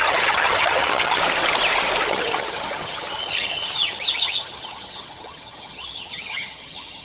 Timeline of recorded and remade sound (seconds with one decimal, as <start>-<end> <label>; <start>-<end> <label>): 0.0-1.2 remade; 1.2-2.1 recorded; 2.1-7.0 remade